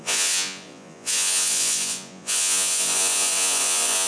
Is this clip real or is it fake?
fake